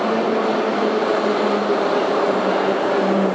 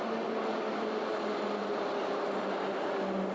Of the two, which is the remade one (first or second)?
first